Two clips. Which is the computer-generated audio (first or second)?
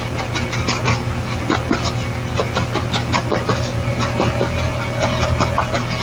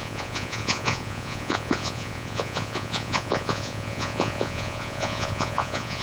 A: second